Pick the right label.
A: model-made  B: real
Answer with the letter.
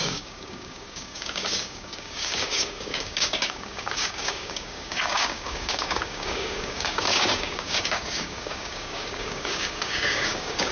A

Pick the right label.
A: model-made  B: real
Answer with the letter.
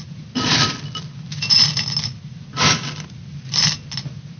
B